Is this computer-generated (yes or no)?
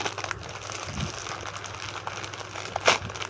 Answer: no